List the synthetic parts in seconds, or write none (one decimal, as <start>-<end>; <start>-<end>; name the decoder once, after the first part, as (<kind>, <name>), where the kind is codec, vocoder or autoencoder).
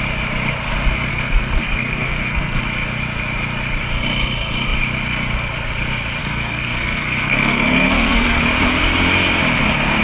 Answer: 1.1-2.6 (codec, SNAC); 6.2-8.4